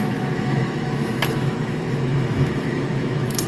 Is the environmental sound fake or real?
fake